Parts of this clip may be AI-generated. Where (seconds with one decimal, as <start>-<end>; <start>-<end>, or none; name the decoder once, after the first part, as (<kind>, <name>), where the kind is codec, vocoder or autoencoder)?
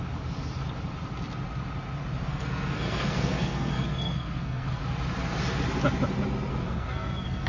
2.3-4.8 (codec, SNAC); 6.5-7.5